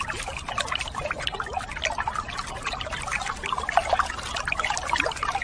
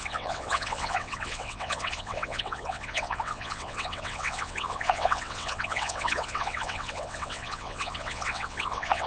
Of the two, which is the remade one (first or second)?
second